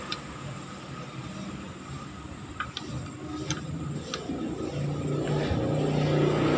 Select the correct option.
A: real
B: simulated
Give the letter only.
A